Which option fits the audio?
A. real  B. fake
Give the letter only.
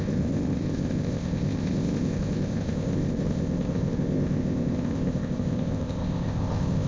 B